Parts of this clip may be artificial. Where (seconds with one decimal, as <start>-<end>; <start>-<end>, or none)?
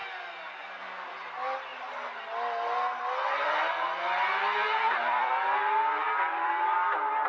none